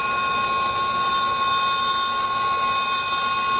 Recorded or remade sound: recorded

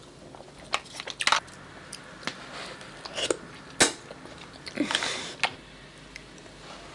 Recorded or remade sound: recorded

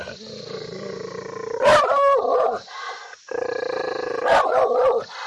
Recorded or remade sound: recorded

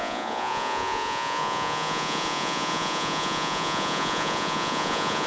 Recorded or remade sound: remade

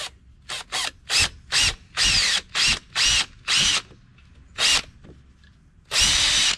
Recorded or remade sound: recorded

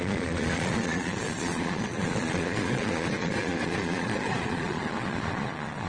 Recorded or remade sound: remade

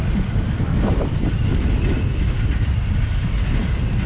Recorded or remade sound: recorded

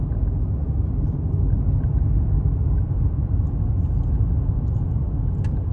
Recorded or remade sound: recorded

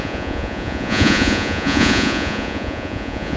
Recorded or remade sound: remade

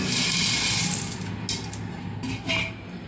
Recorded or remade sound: recorded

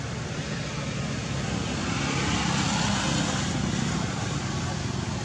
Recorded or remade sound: recorded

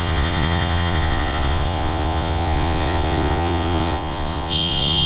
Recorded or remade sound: remade